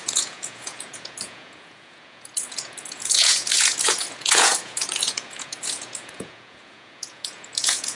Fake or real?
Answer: fake